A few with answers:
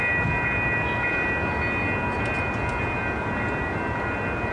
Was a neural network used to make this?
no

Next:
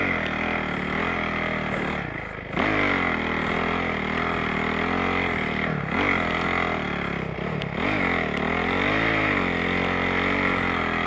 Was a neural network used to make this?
no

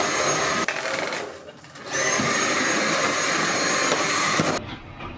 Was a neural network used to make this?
no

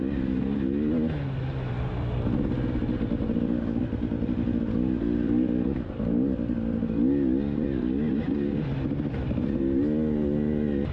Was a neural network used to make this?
no